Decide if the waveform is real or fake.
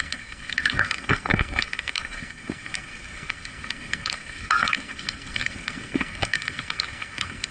fake